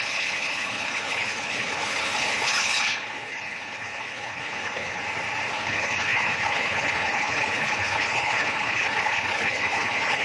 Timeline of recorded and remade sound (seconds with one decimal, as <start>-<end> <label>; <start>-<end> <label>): 0.0-5.0 remade; 5.0-5.5 recorded; 5.5-10.2 remade